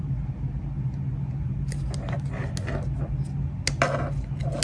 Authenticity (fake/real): real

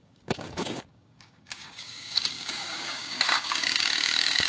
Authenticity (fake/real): fake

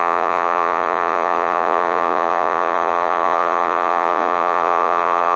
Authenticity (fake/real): fake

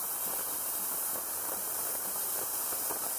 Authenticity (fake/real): fake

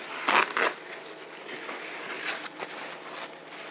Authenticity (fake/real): real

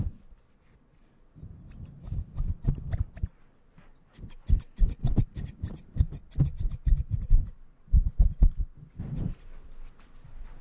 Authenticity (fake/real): real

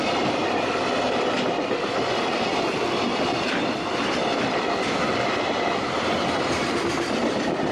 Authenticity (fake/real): real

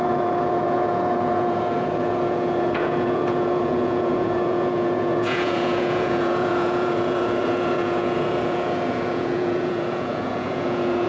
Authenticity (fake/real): fake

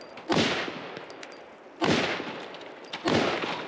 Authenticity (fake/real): real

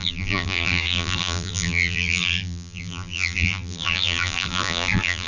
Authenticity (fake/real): fake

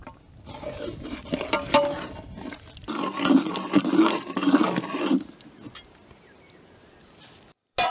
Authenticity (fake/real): real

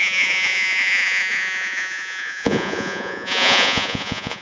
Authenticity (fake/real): fake